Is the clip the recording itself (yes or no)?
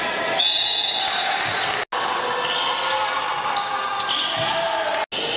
yes